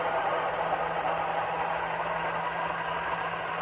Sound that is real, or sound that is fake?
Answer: real